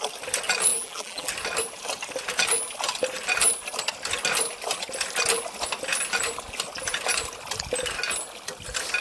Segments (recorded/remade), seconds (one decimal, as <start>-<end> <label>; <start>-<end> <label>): 0.0-0.7 recorded; 0.7-1.3 remade; 1.3-9.0 recorded